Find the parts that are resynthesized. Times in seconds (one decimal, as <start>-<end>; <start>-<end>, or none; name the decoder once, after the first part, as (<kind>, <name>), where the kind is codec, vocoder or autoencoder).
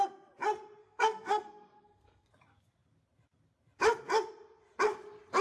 0.8-2.3 (codec, SNAC)